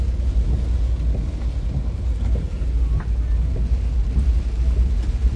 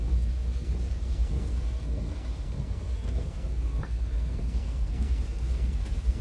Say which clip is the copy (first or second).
second